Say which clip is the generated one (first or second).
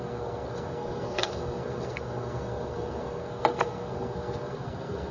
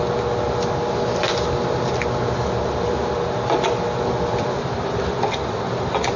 first